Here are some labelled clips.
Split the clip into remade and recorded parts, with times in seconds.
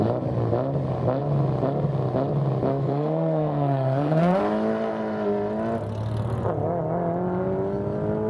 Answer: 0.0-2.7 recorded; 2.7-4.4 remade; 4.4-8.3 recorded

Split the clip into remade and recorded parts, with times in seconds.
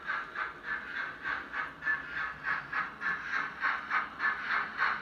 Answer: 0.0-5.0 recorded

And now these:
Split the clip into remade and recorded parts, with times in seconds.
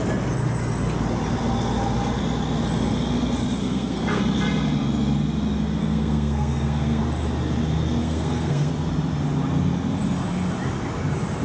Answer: 0.0-3.6 recorded; 3.6-4.2 remade; 4.2-5.8 recorded; 5.8-7.0 remade; 7.0-8.0 recorded; 8.0-8.7 remade; 8.7-11.4 recorded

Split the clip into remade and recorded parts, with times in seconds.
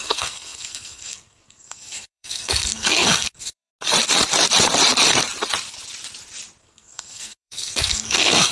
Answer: 0.0-3.7 remade; 3.7-6.6 recorded; 6.6-8.5 remade